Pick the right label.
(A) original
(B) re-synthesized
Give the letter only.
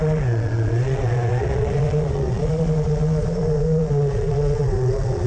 B